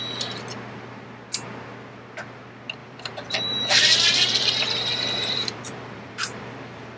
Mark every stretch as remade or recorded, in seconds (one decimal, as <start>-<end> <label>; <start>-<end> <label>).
0.0-2.8 recorded; 2.8-7.0 remade